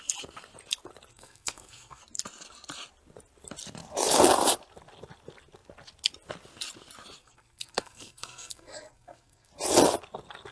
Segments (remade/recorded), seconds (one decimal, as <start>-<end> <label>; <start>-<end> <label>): 0.0-1.1 recorded; 1.1-2.0 remade; 2.0-7.2 recorded; 7.2-9.5 remade; 9.5-10.5 recorded